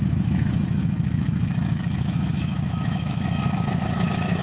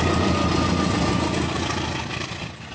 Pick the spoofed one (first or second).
first